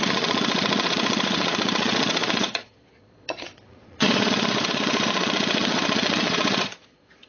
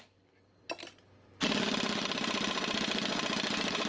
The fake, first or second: first